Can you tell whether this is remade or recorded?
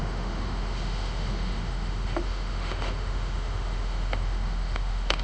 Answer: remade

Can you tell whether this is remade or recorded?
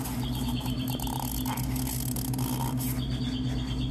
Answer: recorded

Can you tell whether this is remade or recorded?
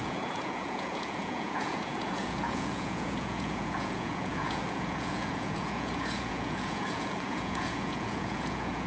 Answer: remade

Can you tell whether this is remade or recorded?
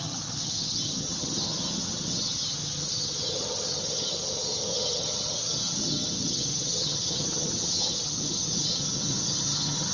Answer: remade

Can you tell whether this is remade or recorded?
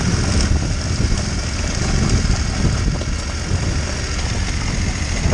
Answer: recorded